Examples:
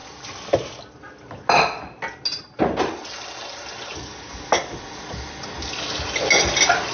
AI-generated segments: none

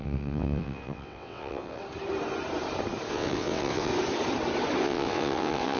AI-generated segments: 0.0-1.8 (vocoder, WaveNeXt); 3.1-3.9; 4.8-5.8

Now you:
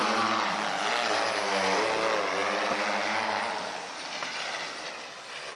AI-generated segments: none

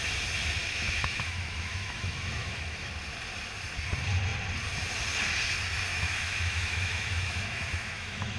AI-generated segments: 0.6-2.9 (autoencoder, DAC-VAE); 5.9-8.4

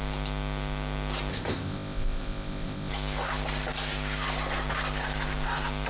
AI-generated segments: 1.3-2.9 (codec, ZipCodec)

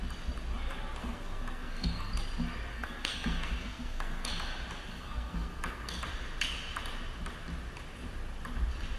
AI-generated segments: 1.0-2.1 (codec, SNAC); 2.7-4.3; 4.9-6.0